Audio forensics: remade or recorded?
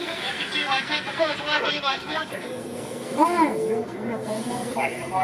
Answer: remade